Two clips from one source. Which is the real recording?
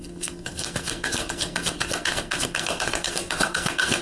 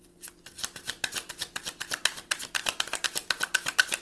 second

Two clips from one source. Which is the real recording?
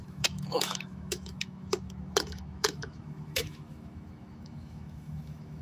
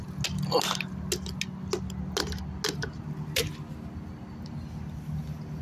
second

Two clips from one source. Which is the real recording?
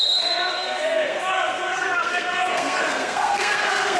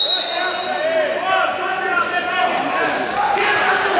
second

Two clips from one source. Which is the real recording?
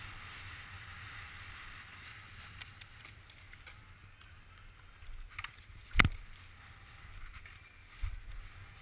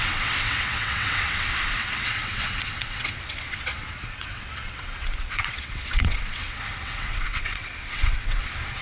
first